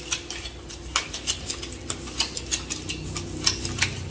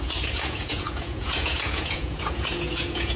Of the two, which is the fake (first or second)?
second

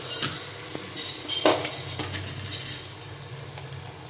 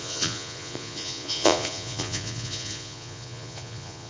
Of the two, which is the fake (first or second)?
second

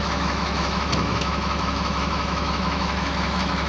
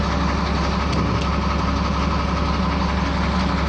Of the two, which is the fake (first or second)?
first